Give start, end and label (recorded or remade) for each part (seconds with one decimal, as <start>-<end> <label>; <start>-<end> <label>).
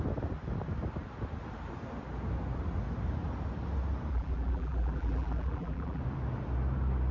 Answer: 0.0-4.1 recorded; 4.1-6.0 remade; 6.0-7.1 recorded